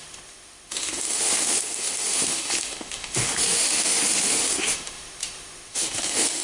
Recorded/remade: remade